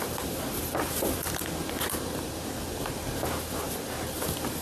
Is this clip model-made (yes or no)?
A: no